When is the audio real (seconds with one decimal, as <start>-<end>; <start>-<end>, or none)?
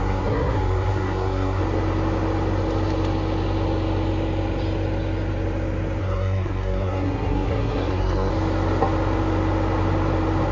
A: 1.6-6.0; 8.3-10.5